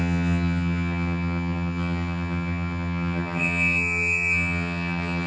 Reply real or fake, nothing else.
fake